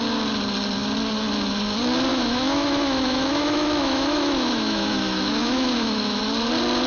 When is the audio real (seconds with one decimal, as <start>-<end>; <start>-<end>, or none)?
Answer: 0.0-2.1; 6.2-6.9

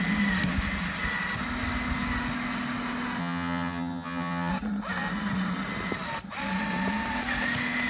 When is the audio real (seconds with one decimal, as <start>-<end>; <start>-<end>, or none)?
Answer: 0.0-3.2; 4.5-7.9